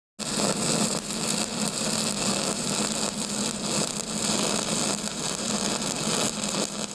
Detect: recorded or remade recorded